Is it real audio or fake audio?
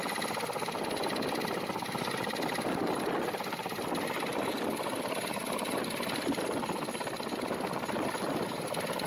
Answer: real